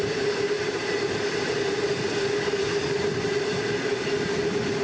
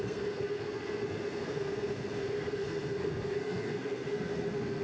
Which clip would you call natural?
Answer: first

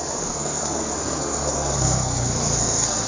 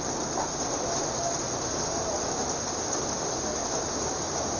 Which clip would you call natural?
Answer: second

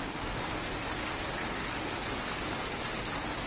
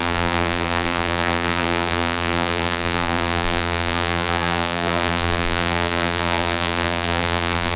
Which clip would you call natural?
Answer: first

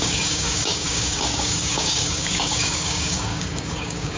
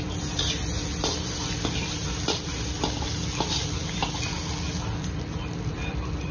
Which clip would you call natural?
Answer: second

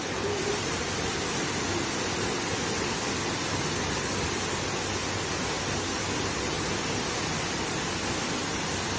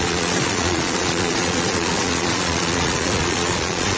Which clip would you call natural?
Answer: first